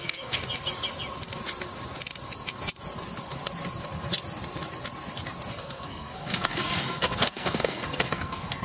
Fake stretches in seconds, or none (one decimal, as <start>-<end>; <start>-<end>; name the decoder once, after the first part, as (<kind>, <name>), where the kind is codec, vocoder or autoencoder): 0.0-0.4 (codec, SNAC); 5.5-8.6

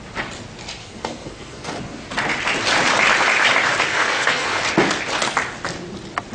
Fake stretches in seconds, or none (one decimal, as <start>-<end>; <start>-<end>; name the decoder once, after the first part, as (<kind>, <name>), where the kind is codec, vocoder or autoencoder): 0.8-1.8 (codec, SNAC); 3.9-4.6

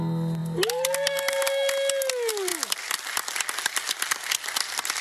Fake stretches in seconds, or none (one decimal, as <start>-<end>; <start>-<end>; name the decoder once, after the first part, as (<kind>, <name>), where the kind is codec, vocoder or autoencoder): none

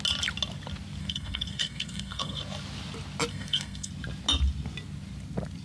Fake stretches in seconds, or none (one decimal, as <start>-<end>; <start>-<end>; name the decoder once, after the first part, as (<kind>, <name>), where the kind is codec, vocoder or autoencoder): 1.0-2.4 (codec, SNAC); 3.3-3.9

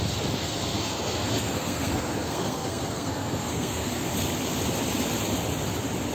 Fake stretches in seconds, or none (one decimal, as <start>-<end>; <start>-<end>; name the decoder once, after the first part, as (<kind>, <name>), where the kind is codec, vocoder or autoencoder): 0.4-4.1 (codec, SNAC)